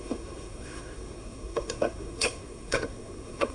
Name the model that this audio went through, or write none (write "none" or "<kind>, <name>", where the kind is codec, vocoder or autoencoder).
codec, SNAC